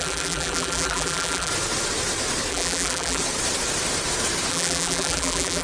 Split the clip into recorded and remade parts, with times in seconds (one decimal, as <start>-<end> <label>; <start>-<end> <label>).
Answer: 0.0-1.5 remade; 1.5-2.5 recorded; 2.5-3.2 remade; 3.2-4.5 recorded; 4.5-5.6 remade